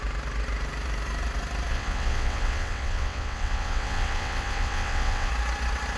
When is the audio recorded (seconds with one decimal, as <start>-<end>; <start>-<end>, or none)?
0.0-1.7; 5.3-6.0